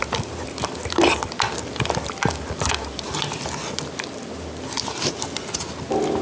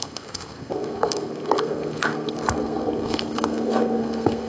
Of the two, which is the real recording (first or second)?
first